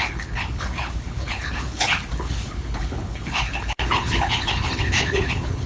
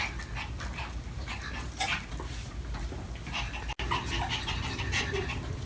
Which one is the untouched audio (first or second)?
second